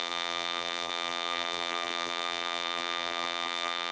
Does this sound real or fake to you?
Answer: fake